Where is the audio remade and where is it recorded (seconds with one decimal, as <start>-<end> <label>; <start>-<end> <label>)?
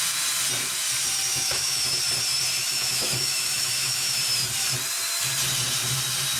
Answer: 0.0-1.3 recorded; 1.3-1.8 remade; 1.8-2.6 recorded; 2.6-4.2 remade; 4.2-6.4 recorded